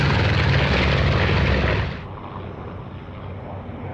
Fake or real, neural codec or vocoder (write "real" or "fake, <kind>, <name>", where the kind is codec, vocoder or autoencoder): real